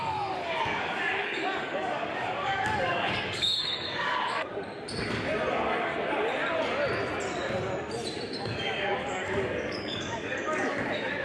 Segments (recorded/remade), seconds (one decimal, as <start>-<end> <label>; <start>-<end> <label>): 0.0-4.5 remade; 4.5-5.5 recorded; 5.5-5.9 remade; 5.9-8.4 recorded; 8.4-11.2 remade